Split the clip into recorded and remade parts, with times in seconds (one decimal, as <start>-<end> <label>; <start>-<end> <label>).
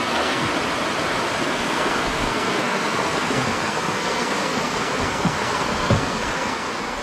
0.0-0.5 remade; 0.5-1.4 recorded; 1.4-7.0 remade